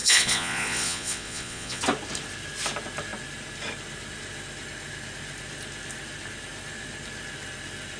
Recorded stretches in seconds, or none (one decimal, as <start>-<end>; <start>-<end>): 1.8-8.0